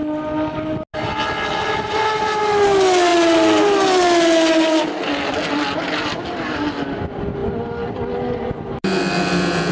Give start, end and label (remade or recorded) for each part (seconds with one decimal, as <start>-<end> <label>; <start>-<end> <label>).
0.0-9.7 recorded